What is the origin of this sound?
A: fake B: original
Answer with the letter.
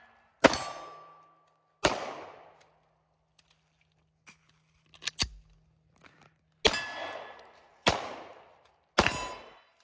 B